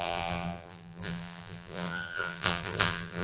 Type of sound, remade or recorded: remade